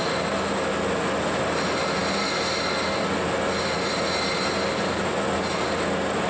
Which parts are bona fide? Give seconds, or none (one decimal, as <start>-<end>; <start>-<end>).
0.0-6.3